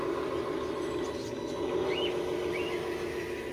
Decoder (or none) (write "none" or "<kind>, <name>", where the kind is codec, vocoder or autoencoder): none